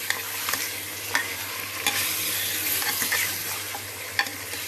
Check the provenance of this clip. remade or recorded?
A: recorded